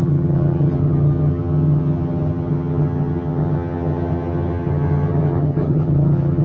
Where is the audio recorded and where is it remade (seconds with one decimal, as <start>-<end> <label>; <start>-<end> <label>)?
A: 0.0-6.4 remade